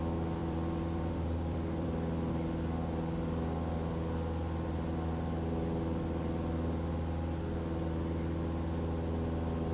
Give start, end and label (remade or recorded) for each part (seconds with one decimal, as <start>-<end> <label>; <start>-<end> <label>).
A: 0.0-0.4 recorded; 0.4-2.3 remade; 2.3-9.7 recorded